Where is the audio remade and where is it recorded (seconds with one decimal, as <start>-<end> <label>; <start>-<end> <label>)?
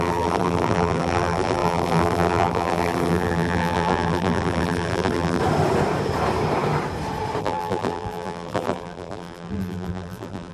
0.0-5.4 remade; 5.4-7.4 recorded; 7.4-10.5 remade